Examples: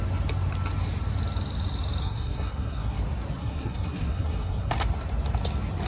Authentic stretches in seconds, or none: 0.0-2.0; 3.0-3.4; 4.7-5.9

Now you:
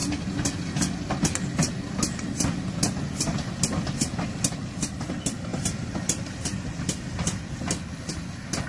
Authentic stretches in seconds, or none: 0.0-8.7